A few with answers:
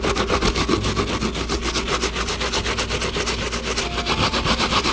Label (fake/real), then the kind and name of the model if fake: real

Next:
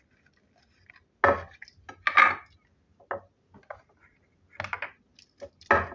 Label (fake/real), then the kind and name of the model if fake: real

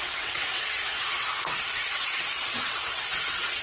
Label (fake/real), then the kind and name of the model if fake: fake, vocoder, WaveNeXt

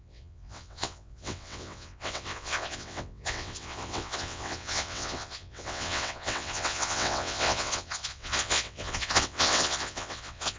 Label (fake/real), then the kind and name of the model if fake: fake, vocoder, WaveNeXt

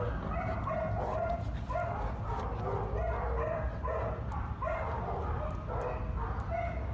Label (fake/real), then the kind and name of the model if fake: real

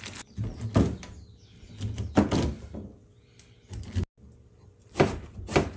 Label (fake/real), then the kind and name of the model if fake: real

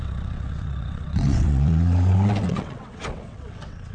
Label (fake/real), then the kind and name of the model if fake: fake, vocoder, WaveNeXt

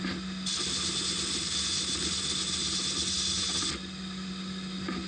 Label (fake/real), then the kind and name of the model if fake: real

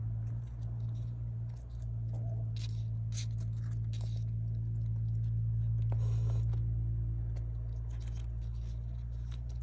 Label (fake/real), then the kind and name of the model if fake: real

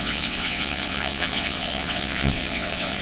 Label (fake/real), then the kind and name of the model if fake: fake, vocoder, WaveNeXt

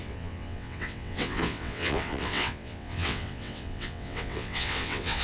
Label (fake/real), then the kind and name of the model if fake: fake, vocoder, WaveNeXt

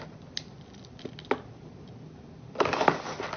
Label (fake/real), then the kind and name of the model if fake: real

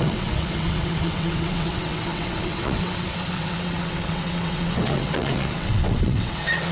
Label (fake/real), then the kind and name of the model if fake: fake, vocoder, WaveNeXt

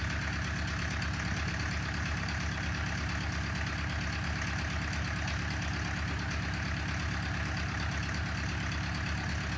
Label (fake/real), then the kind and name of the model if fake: real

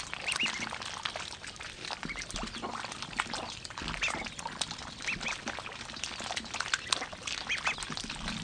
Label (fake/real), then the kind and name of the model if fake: real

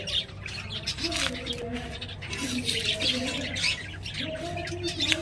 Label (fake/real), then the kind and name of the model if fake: real